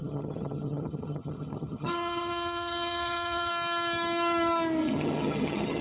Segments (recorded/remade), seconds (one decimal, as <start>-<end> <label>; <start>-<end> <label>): 0.0-3.5 remade; 3.5-4.8 recorded; 4.8-5.8 remade